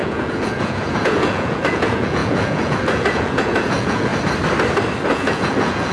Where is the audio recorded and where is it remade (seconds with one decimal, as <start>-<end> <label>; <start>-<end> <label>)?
0.0-4.1 remade; 4.1-5.1 recorded; 5.1-5.9 remade